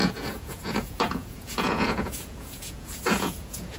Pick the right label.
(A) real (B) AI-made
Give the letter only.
B